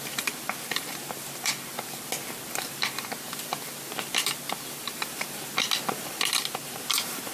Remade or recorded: remade